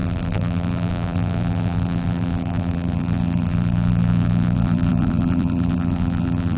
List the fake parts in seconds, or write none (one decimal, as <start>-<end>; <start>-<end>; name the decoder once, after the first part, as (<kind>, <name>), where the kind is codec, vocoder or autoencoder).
0.0-6.6 (vocoder, BigVGAN v2)